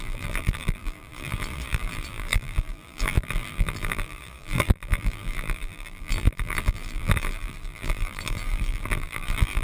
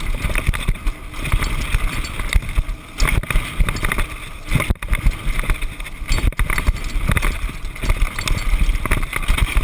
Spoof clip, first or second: first